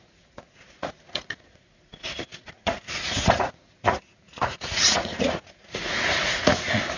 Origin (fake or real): fake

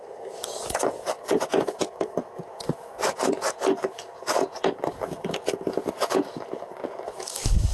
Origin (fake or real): fake